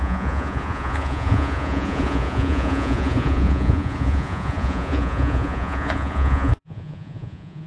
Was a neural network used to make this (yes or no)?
yes